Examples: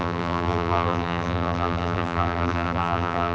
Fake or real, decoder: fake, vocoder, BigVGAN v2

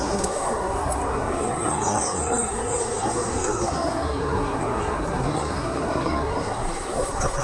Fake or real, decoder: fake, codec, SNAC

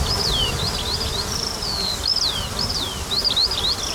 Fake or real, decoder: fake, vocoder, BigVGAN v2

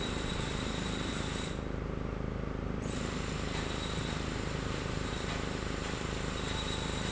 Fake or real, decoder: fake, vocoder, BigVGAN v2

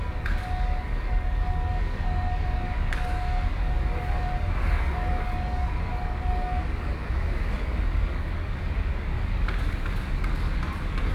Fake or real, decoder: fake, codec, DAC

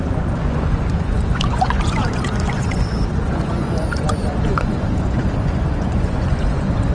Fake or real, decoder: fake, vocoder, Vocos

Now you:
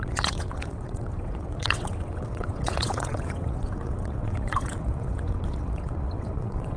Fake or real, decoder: fake, vocoder, WaveNeXt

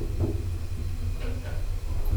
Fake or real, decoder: real